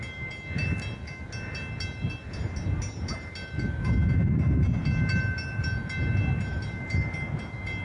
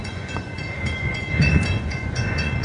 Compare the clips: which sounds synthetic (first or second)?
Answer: second